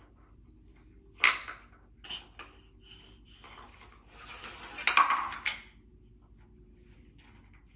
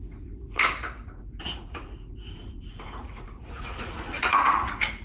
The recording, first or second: first